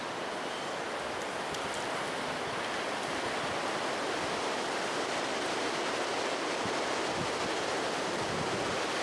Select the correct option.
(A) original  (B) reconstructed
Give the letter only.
A